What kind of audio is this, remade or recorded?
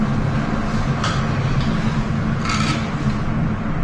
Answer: recorded